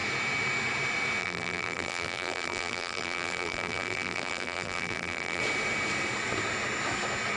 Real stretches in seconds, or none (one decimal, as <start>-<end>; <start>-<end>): 0.0-1.2; 5.4-7.4